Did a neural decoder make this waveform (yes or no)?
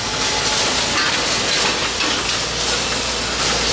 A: no